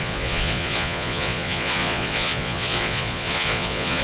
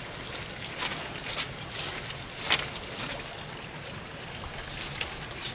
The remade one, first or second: first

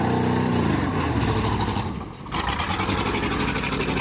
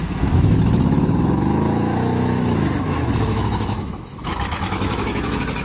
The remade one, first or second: second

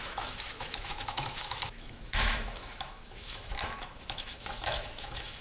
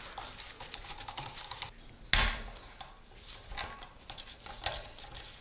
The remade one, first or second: first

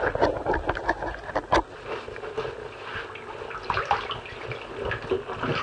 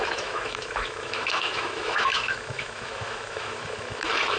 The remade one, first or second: second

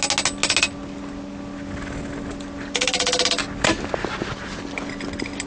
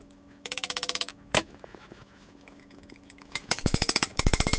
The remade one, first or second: second